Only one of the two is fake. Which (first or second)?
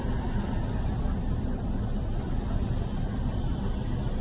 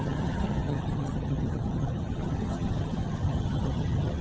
second